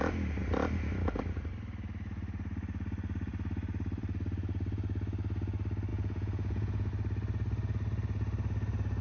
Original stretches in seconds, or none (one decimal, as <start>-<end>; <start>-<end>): 0.0-5.9; 6.9-9.0